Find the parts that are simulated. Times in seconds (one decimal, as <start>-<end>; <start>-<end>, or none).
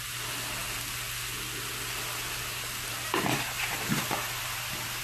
none